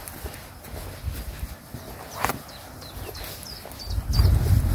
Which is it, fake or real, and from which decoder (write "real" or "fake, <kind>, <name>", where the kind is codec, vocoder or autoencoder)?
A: real